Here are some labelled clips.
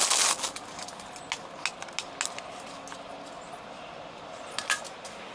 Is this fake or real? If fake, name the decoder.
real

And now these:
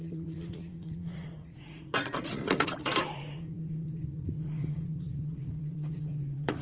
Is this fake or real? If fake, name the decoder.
fake, vocoder, Vocos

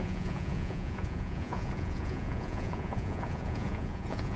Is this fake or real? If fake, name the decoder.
fake, vocoder, Vocos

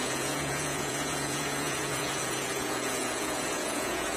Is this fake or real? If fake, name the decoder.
fake, vocoder, Vocos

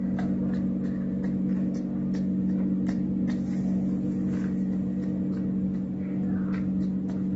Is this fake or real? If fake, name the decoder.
real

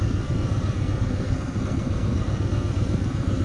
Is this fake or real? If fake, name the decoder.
fake, codec, SNAC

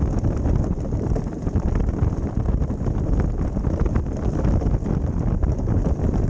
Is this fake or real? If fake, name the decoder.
real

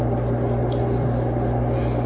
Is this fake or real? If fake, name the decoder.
real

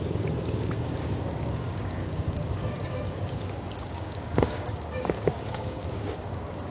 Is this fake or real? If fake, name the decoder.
fake, codec, DAC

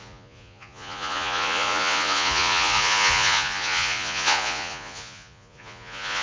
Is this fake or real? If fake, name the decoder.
fake, vocoder, Vocos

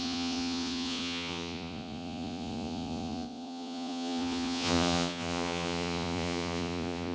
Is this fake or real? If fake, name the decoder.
fake, vocoder, Vocos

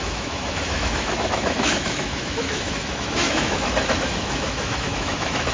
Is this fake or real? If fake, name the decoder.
fake, autoencoder, DAC-VAE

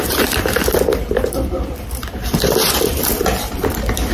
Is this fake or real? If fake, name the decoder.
fake, vocoder, BigVGAN v2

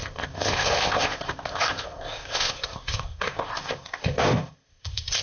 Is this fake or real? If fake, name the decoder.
fake, codec, ZipCodec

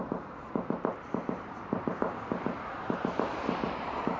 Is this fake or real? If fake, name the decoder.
real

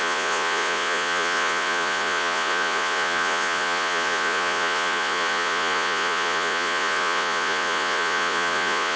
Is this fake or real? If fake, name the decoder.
fake, vocoder, Vocos